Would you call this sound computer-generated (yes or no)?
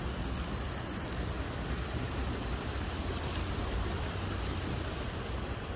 no